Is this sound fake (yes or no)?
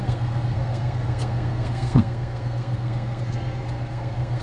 yes